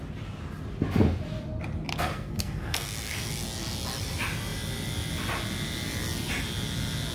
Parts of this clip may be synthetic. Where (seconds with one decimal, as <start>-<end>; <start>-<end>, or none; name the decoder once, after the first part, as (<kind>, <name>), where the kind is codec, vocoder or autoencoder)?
1.9-3.3 (codec, SNAC)